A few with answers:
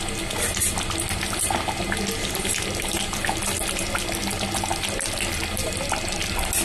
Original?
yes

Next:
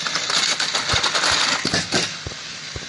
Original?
yes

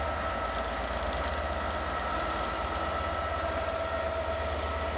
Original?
yes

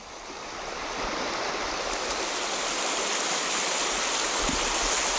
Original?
yes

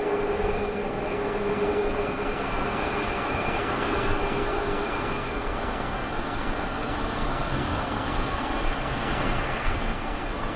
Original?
no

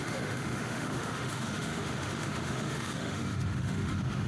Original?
no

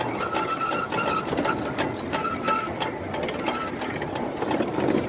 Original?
yes